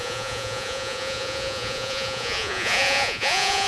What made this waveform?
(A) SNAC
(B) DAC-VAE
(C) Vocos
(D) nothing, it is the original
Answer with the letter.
C